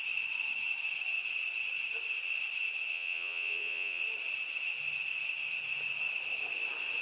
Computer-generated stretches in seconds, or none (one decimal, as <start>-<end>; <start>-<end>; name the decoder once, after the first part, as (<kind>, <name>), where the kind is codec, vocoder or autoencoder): 2.9-4.0 (vocoder, Vocos)